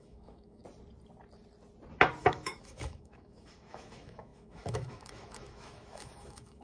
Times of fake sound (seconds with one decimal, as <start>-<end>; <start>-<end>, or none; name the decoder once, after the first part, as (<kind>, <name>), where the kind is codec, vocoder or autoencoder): 0.0-0.6 (autoencoder, DAC-VAE); 2.2-6.6